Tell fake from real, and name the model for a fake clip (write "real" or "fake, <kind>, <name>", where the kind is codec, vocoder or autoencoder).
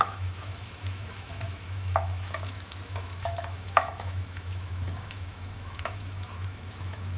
fake, autoencoder, DAC-VAE